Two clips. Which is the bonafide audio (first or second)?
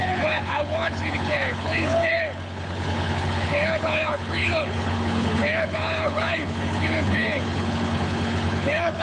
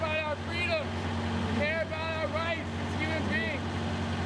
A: second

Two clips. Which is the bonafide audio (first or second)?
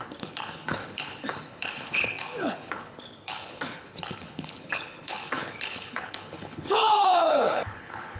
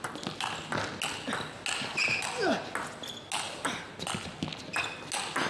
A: second